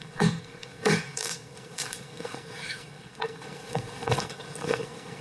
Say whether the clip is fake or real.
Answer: fake